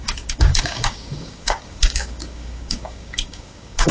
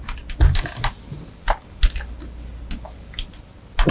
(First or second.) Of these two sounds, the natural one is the second